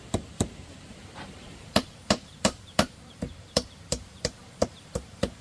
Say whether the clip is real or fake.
fake